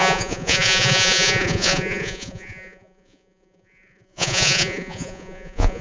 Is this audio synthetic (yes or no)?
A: yes